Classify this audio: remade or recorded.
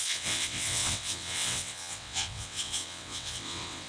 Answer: remade